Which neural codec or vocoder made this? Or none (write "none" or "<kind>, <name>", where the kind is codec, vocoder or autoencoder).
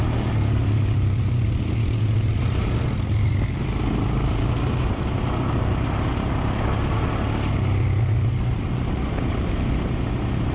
none